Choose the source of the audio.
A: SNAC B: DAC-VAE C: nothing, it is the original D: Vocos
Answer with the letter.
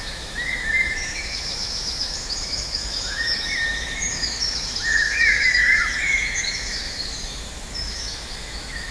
B